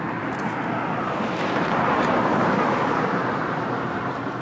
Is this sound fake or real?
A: fake